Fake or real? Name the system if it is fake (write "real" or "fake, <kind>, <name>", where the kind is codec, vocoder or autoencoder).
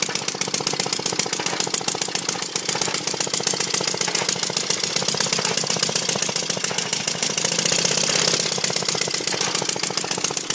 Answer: real